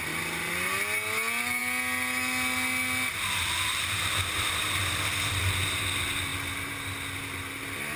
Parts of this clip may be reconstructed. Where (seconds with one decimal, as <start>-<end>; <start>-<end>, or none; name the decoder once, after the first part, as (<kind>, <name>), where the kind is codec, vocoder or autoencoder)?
none